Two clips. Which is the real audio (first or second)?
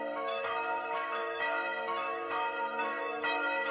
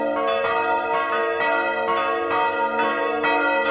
second